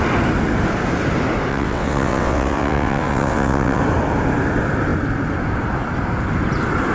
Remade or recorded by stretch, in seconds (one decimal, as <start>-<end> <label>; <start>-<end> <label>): 0.0-1.5 recorded; 1.5-3.8 remade; 3.8-6.9 recorded